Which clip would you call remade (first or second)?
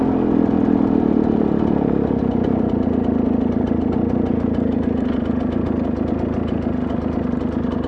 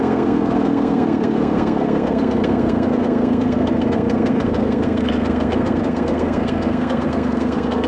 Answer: second